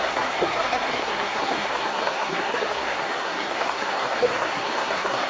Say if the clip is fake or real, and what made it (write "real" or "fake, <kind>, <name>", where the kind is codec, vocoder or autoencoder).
fake, codec, SNAC